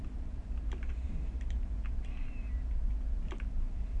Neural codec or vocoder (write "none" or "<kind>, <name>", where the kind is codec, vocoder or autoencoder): vocoder, BigVGAN v2